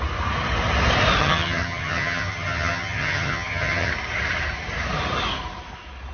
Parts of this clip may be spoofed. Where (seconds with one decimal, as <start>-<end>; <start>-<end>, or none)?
1.2-3.9